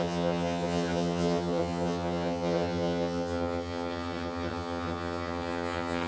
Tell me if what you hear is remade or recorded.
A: remade